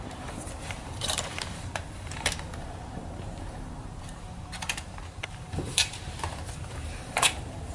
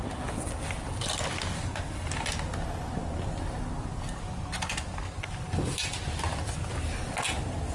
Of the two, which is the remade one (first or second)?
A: first